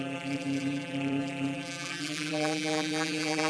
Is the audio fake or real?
fake